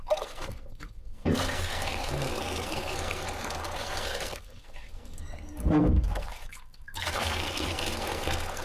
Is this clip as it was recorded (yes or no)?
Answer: no